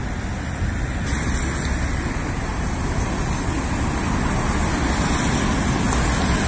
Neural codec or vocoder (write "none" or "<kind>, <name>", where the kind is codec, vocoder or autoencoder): none